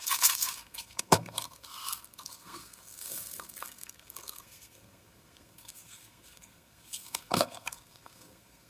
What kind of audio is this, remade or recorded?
remade